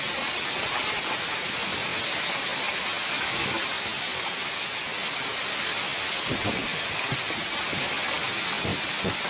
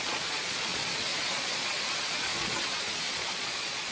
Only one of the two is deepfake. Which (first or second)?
second